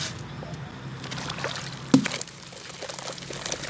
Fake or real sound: real